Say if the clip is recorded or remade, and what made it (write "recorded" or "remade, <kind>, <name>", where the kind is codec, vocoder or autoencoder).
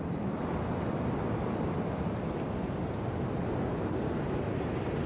recorded